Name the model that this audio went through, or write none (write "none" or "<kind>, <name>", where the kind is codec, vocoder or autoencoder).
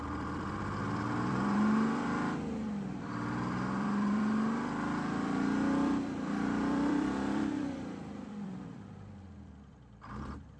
vocoder, BigVGAN v2